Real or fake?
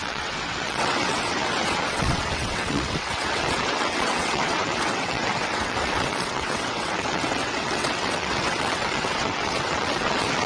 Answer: fake